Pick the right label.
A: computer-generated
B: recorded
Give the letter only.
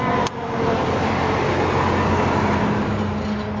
B